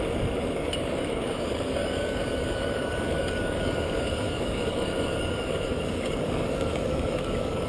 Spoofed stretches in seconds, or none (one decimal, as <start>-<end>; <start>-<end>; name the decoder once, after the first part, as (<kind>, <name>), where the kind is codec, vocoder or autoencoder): 0.0-7.7 (codec, DAC)